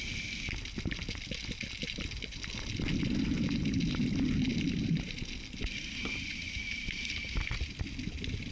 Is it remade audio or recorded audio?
recorded